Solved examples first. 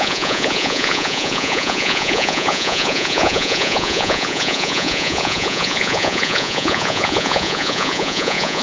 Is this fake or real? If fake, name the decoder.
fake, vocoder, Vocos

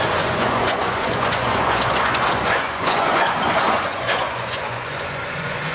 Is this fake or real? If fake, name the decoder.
fake, vocoder, Vocos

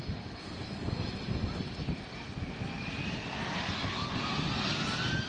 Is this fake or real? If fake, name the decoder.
real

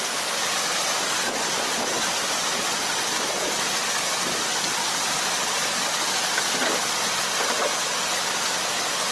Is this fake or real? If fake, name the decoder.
real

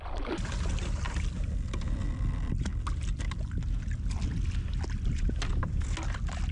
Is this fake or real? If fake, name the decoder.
real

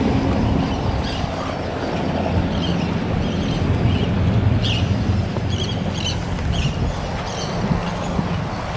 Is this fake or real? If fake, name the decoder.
real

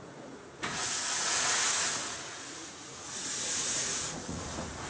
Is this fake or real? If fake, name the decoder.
fake, vocoder, Vocos